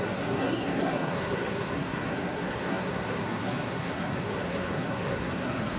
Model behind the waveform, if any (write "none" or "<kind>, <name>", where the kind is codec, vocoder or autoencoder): codec, SNAC